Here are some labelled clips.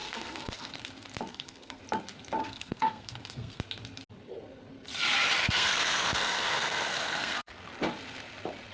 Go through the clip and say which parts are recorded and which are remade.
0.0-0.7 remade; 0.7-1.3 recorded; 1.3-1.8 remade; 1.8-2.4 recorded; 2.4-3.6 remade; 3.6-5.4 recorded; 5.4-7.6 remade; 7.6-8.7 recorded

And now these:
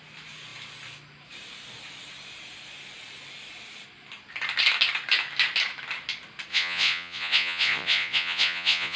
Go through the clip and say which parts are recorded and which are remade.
0.0-6.5 recorded; 6.5-9.0 remade

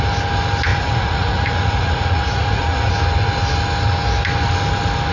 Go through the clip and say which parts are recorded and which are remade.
0.0-0.7 recorded; 0.7-2.9 remade; 2.9-5.1 recorded

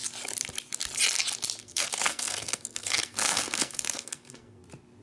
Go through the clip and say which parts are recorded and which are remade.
0.0-1.6 recorded; 1.6-4.6 remade; 4.6-5.0 recorded